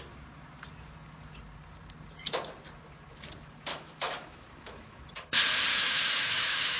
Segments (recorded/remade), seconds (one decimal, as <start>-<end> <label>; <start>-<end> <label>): 0.0-3.7 recorded; 3.7-5.0 remade; 5.0-5.7 recorded; 5.7-6.8 remade